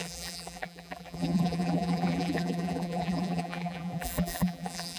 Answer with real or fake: fake